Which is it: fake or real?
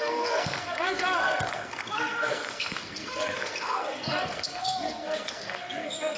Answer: fake